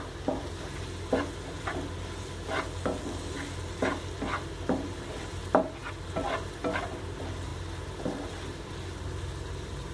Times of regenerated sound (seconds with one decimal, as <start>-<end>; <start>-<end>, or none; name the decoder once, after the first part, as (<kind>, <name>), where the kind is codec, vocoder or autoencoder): none